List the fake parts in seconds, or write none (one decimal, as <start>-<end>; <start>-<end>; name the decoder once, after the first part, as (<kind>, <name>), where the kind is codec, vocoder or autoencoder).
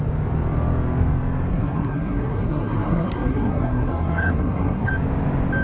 1.5-4.9 (codec, SNAC)